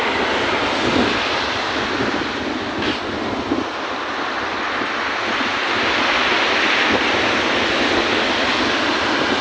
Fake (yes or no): no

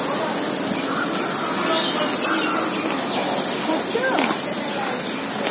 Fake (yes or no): no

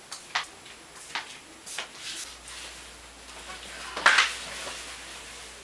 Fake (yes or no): no